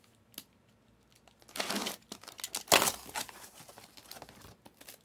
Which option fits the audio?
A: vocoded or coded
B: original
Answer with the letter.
B